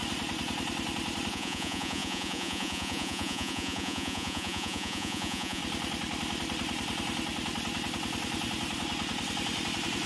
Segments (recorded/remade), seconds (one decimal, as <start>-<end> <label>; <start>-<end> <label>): 0.0-1.3 recorded; 1.3-5.6 remade; 5.6-10.1 recorded